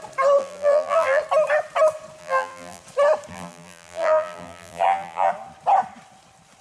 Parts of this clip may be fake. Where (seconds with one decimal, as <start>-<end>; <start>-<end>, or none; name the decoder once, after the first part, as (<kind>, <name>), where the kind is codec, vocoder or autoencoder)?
0.4-1.2 (vocoder, BigVGAN v2); 2.2-2.8; 3.3-5.3